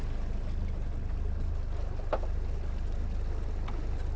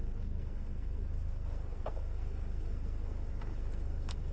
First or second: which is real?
first